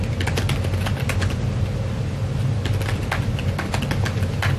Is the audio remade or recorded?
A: remade